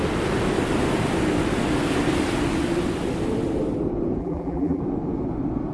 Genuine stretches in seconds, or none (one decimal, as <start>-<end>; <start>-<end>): 0.0-4.2; 4.8-5.7